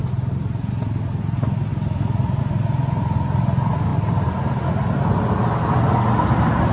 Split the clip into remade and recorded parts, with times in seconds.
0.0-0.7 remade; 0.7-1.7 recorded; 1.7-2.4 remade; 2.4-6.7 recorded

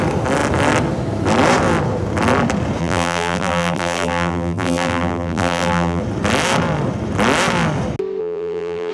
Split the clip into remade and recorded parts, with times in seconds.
0.0-2.8 recorded; 2.8-6.0 remade; 6.0-8.2 recorded; 8.2-8.9 remade

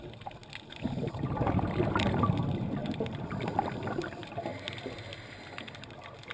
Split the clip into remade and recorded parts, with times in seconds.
0.0-0.4 remade; 0.4-1.4 recorded; 1.4-4.5 remade; 4.5-6.3 recorded

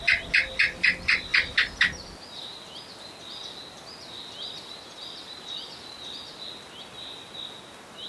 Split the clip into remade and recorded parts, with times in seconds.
0.0-8.1 recorded

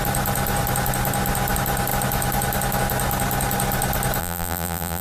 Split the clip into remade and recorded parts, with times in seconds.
0.0-4.2 recorded; 4.2-5.0 remade